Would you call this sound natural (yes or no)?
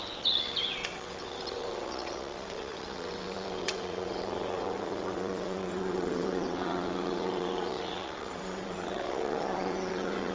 no